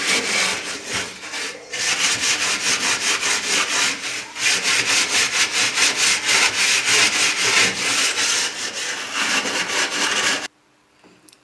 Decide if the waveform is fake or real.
real